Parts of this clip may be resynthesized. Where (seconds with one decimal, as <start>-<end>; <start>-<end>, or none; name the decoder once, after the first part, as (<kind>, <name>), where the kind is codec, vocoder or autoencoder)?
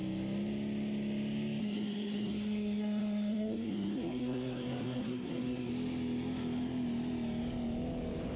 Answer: 1.6-5.7 (codec, SNAC)